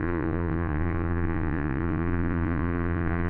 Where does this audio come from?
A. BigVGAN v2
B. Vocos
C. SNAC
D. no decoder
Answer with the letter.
B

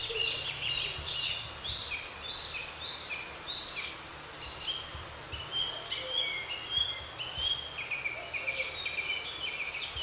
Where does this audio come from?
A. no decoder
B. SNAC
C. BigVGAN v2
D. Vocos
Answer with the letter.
A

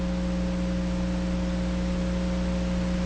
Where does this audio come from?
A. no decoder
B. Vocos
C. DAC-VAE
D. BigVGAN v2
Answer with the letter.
A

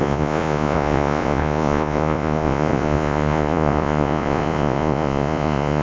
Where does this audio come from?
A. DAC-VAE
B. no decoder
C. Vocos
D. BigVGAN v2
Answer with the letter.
C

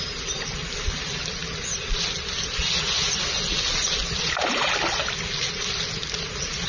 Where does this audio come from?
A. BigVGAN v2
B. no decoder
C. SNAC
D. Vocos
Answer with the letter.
B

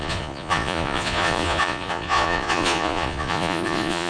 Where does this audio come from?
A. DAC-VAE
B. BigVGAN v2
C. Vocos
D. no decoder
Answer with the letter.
C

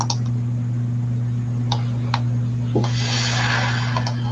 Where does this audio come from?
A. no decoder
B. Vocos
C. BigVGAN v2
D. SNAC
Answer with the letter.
A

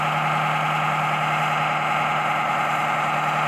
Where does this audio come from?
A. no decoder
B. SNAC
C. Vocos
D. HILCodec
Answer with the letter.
A